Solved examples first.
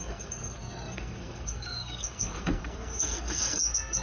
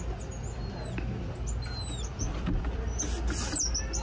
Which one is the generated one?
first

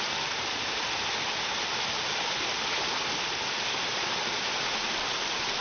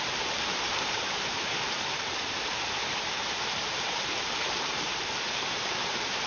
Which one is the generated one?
second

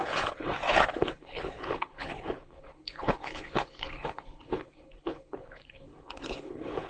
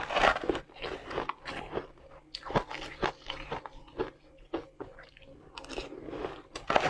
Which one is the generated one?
first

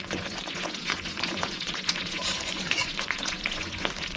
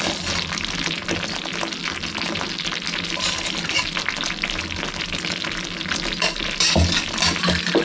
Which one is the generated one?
first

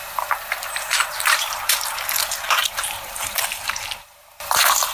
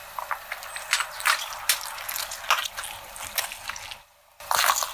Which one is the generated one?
first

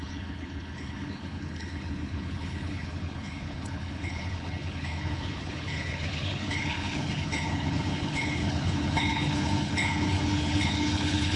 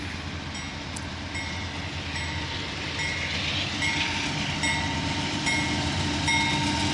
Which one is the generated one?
first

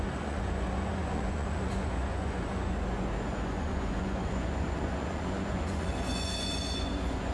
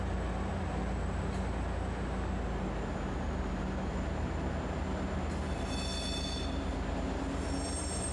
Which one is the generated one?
first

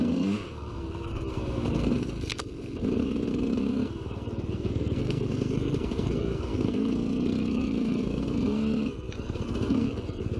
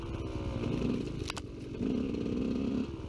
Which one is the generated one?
first